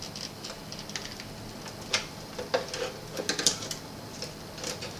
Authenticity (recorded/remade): recorded